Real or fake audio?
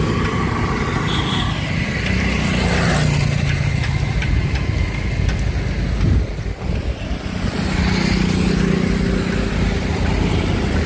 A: real